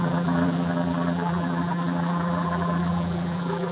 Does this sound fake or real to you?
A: fake